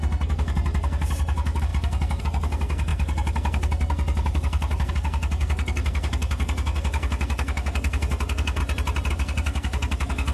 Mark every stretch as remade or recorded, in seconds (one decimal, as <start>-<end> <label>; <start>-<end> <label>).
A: 0.0-8.6 remade; 8.6-9.1 recorded; 9.1-10.3 remade